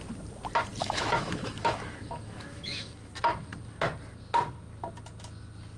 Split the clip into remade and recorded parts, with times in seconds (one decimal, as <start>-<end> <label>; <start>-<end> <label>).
0.0-0.8 recorded; 0.8-3.1 remade; 3.1-5.8 recorded